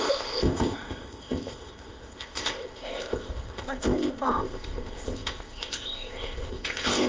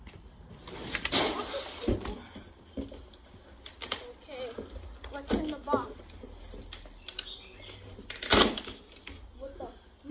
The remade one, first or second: first